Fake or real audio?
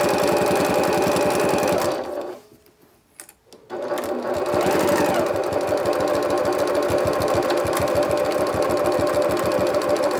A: real